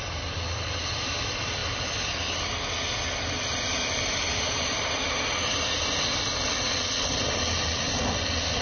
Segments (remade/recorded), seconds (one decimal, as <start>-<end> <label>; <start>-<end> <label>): 0.0-4.3 recorded; 4.3-6.0 remade; 6.0-8.6 recorded